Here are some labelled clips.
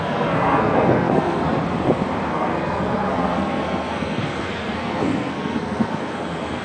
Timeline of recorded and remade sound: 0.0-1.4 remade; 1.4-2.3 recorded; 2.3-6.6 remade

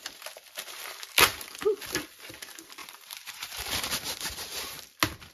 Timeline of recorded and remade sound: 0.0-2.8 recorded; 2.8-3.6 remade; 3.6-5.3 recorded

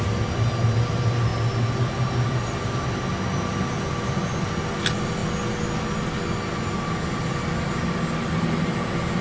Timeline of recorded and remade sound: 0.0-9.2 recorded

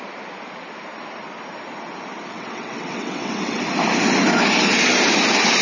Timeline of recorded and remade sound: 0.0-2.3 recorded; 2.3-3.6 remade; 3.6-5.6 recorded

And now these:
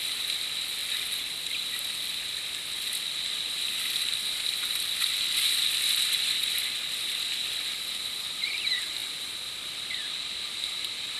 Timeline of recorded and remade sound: 0.0-11.2 recorded

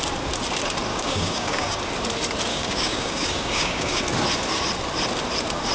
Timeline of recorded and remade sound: 0.0-0.9 recorded; 0.9-1.8 remade; 1.8-2.5 recorded; 2.5-4.0 remade; 4.0-5.7 recorded

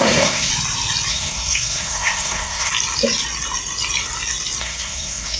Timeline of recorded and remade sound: 0.0-0.5 remade; 0.5-1.1 recorded; 1.1-2.7 remade; 2.7-4.6 recorded; 4.6-5.4 remade

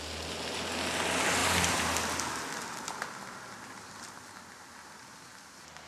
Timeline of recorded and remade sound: 0.0-5.9 recorded